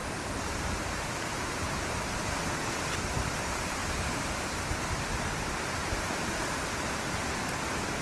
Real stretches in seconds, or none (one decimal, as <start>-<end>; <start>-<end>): 3.8-5.3